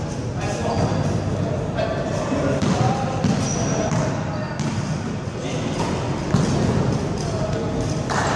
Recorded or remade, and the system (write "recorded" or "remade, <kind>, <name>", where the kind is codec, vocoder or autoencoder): recorded